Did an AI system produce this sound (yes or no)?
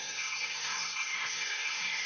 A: yes